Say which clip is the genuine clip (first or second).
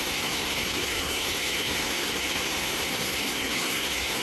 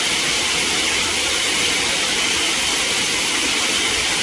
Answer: second